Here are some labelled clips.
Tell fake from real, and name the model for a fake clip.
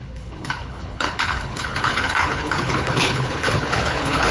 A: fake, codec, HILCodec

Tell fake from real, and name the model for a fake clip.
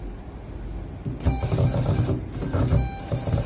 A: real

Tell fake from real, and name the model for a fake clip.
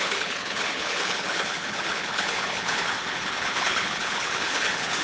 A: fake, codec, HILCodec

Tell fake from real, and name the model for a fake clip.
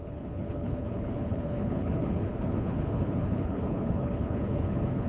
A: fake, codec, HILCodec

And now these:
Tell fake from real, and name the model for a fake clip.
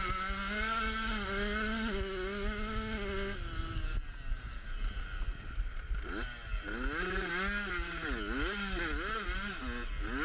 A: real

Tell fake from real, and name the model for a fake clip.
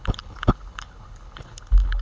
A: fake, codec, HILCodec